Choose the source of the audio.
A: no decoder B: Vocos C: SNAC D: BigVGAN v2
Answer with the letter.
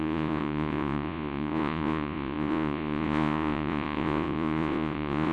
B